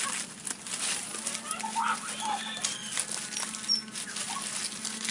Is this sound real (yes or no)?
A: yes